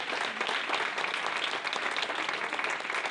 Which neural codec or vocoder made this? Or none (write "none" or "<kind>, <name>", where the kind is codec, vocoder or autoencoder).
none